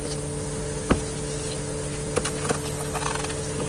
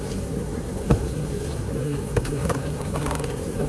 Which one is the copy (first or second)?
second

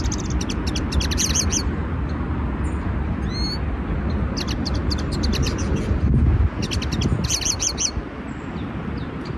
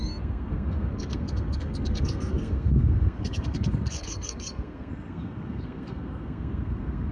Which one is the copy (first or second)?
second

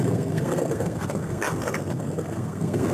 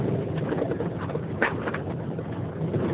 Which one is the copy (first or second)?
first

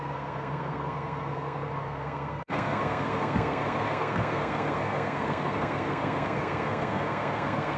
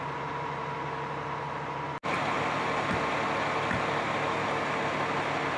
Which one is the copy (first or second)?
first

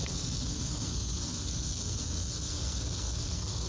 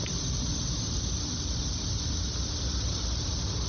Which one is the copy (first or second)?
first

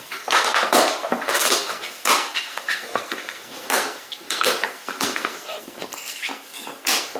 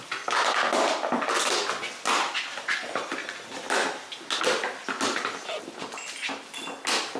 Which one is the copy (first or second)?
first